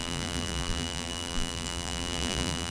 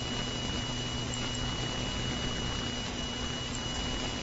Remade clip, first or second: first